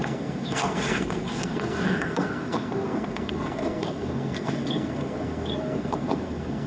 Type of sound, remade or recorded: remade